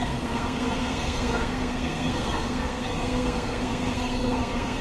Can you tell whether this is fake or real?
fake